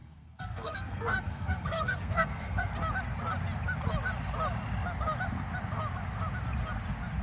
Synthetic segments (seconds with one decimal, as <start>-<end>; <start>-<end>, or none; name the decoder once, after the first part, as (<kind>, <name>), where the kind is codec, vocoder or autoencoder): 0.0-2.7 (codec, SNAC)

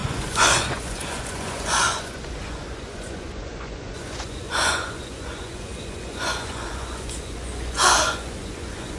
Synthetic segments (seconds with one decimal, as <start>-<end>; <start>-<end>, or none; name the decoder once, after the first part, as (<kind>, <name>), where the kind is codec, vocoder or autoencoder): 0.0-9.0 (vocoder, Vocos)

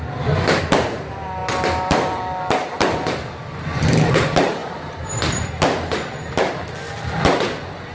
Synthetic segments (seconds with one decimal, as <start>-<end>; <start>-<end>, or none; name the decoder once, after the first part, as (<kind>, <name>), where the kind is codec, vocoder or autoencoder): 1.4-4.1 (vocoder, BigVGAN v2); 4.6-5.5

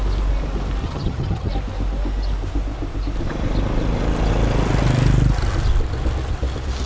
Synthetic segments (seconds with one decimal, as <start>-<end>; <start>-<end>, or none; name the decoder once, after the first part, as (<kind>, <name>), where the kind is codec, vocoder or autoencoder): 0.8-1.5 (vocoder, HiFi-GAN)

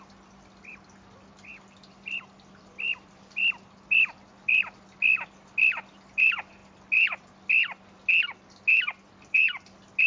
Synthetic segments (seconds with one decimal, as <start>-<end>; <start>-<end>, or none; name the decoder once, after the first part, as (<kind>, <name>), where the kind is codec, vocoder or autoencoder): none